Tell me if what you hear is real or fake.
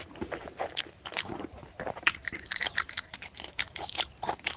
fake